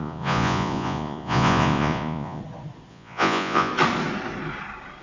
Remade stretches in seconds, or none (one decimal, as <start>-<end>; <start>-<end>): 0.0-2.4; 2.9-3.7